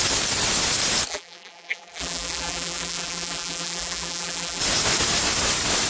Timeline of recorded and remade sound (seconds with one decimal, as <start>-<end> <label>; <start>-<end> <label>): 0.0-1.1 recorded; 1.1-4.6 remade; 4.6-5.9 recorded